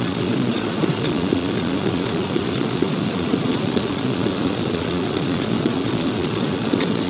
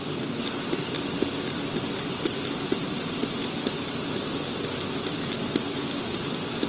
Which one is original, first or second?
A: second